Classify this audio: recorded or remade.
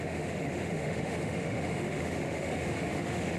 remade